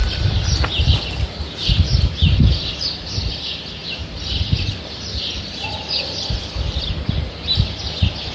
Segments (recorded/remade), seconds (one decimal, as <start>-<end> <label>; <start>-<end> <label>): 0.0-3.8 recorded; 3.8-8.3 remade